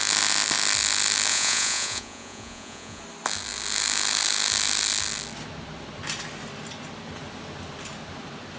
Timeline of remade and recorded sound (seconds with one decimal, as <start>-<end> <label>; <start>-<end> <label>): 0.0-1.3 recorded; 1.3-3.0 remade; 3.0-8.6 recorded